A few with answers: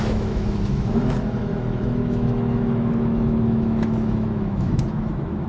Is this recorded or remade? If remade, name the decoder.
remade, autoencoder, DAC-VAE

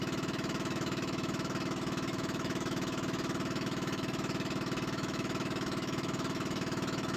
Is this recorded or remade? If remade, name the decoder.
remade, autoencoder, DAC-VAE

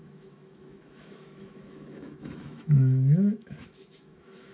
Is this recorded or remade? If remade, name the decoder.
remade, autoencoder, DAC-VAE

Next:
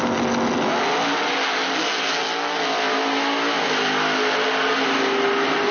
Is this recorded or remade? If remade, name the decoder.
recorded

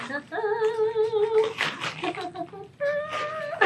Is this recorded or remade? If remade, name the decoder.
recorded